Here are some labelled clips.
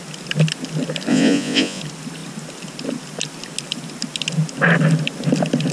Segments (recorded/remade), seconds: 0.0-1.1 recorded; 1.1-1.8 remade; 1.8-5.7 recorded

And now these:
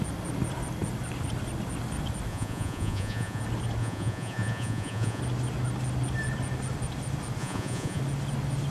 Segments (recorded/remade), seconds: 0.0-2.3 recorded; 2.3-3.4 remade; 3.4-3.8 recorded; 3.8-5.2 remade; 5.2-7.4 recorded; 7.4-8.0 remade; 8.0-8.7 recorded